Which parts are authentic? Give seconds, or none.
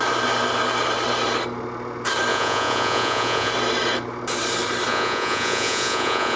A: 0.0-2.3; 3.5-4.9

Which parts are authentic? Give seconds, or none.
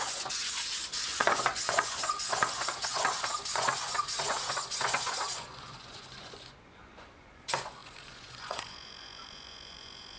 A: none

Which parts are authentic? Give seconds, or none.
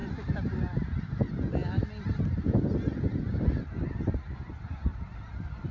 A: 0.0-5.7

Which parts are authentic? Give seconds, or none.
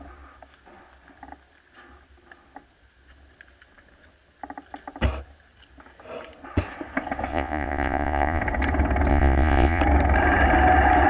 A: 0.0-7.3; 8.4-9.1; 9.8-11.1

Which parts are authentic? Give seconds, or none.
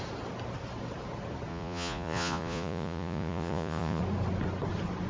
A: 0.0-1.5; 4.0-5.1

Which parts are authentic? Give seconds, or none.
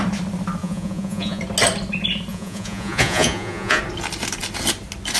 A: 0.0-0.6; 1.4-2.3; 3.8-5.2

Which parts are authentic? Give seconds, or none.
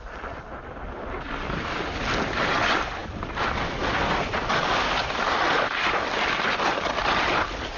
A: 0.0-7.8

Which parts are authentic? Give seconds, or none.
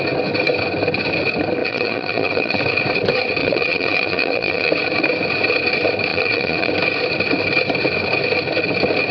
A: 0.0-1.6; 2.6-3.4; 4.7-6.1; 6.7-9.1